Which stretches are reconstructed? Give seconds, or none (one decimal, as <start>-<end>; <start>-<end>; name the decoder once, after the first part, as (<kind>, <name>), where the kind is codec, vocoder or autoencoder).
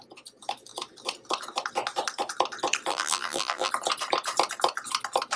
2.9-3.7 (vocoder, BigVGAN v2)